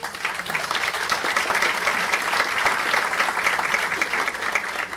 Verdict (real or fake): real